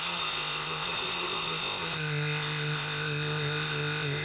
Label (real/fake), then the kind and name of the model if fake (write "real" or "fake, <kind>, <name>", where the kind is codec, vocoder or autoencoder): fake, codec, ZipCodec